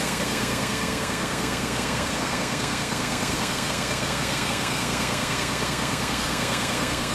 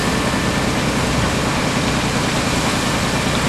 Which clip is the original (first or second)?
second